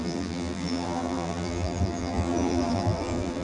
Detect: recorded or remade remade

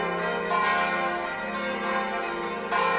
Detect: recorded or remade recorded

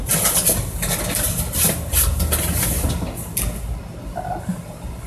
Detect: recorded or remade recorded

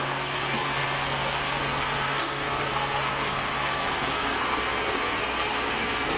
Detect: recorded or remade remade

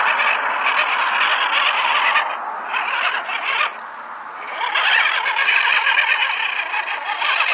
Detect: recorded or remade recorded